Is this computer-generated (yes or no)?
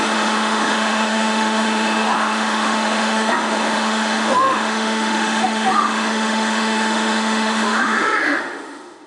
yes